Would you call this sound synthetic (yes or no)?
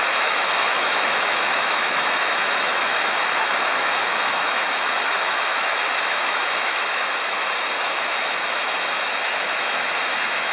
yes